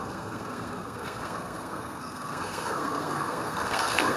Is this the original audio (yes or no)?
no